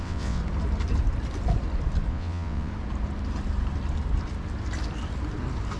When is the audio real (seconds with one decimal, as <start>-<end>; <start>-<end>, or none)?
0.4-2.1; 2.7-5.8